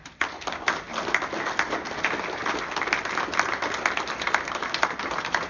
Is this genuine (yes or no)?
yes